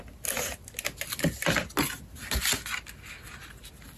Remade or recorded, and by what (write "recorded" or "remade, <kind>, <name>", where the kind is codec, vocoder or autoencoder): recorded